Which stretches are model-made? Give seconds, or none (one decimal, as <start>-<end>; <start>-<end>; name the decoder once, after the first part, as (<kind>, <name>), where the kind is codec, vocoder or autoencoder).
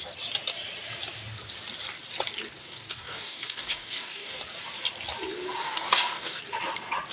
2.6-4.4 (codec, DAC); 5.6-6.4